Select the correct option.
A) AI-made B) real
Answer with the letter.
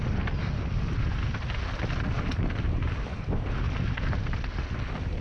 B